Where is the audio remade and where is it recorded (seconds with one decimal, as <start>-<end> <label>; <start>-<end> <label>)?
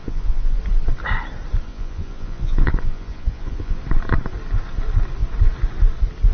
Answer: 0.0-0.6 remade; 0.6-1.7 recorded; 1.7-3.8 remade; 3.8-6.3 recorded